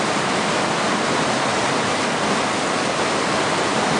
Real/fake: real